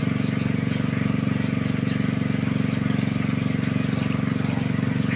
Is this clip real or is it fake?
real